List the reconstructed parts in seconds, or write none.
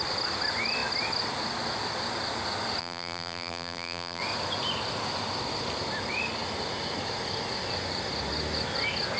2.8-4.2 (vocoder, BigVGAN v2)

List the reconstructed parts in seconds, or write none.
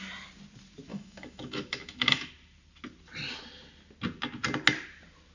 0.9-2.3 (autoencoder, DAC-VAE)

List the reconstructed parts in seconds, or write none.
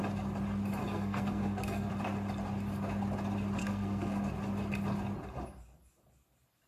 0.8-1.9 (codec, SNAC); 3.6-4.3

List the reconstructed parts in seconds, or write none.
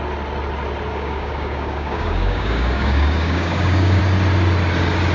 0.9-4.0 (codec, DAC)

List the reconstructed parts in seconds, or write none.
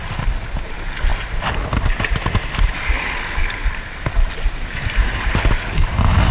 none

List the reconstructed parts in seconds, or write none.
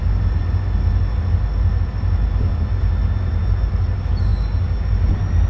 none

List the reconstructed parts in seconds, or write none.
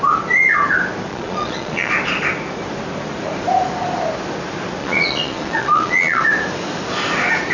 1.1-1.9 (vocoder, Vocos); 4.8-6.2